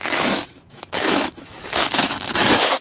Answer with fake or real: fake